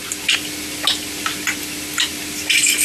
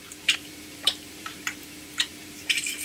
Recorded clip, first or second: first